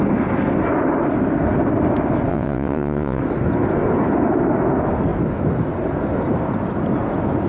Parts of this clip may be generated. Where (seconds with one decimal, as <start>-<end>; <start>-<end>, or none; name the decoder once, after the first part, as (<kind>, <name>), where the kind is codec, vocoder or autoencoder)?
2.3-3.2 (vocoder, WaveNeXt)